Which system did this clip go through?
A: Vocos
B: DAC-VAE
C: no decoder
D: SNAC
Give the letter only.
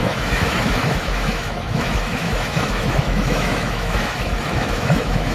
B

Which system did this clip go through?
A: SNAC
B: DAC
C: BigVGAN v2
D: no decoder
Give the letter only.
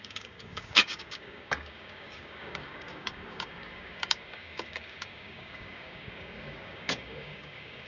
B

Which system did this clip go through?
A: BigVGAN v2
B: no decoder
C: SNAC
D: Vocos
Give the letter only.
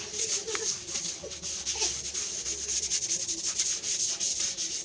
B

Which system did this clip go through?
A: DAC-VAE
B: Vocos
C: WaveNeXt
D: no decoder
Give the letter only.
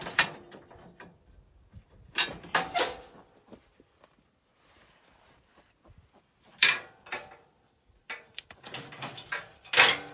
D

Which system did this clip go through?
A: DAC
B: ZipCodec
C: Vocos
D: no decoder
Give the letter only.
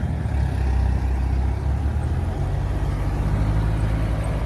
D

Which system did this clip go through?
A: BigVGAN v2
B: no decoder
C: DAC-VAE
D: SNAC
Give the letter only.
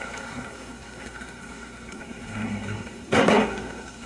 D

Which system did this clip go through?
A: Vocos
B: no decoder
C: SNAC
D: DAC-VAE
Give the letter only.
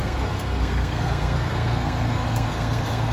C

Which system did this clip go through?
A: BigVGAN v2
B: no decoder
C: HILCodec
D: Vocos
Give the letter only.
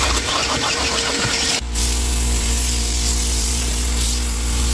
A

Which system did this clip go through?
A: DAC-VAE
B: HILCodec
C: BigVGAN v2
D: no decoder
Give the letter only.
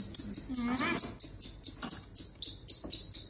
D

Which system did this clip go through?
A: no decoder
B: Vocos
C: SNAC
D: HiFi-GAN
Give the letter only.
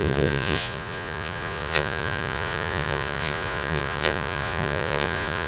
B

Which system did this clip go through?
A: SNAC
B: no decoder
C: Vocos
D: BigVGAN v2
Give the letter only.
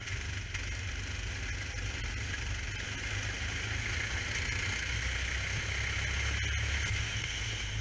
B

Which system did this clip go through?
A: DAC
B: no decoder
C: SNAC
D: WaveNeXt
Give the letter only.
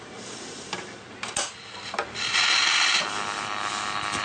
B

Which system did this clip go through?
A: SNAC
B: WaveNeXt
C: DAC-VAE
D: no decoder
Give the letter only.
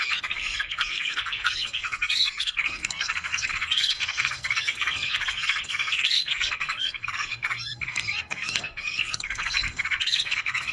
A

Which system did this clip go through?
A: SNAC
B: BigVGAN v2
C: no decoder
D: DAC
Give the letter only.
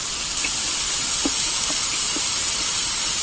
C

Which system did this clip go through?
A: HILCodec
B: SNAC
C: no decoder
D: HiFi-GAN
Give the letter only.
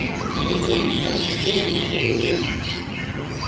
D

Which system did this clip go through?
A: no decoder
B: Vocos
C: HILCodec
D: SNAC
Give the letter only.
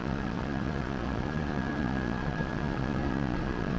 B